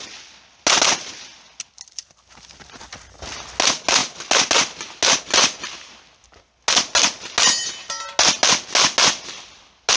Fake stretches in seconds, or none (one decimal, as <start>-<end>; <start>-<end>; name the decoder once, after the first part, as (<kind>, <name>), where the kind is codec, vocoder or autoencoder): none

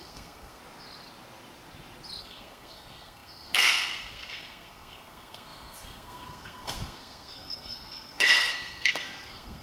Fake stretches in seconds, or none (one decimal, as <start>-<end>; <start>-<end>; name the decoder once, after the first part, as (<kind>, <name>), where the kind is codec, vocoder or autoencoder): 0.0-0.6 (codec, SNAC); 2.2-9.6

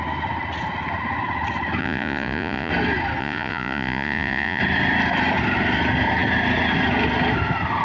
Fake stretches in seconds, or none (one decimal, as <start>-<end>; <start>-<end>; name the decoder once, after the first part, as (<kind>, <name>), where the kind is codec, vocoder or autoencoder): 1.8-2.7 (vocoder, Vocos); 3.2-4.6

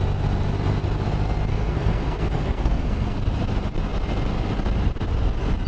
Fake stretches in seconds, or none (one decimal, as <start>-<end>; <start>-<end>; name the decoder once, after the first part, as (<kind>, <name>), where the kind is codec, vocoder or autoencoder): 1.5-3.2 (codec, SNAC)

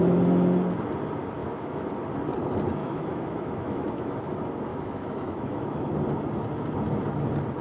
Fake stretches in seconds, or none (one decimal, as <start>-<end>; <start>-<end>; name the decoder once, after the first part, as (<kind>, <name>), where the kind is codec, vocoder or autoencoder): 1.4-1.9 (autoencoder, DAC-VAE); 2.8-4.3; 4.7-5.9

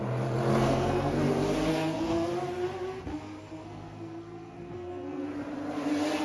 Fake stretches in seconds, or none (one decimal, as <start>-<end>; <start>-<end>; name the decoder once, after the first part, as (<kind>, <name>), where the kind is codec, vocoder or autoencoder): 0.5-1.2 (codec, SNAC); 1.7-2.3; 3.1-5.3

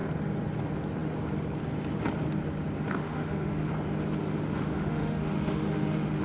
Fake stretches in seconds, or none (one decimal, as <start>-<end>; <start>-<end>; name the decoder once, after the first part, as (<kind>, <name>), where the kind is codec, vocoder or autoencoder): 3.0-3.7 (autoencoder, DAC-VAE); 4.2-6.2